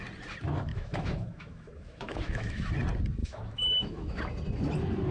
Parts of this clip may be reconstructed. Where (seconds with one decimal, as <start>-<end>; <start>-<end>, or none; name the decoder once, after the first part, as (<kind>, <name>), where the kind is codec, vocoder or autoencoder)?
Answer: 0.7-2.7 (autoencoder, DAC-VAE); 3.2-4.2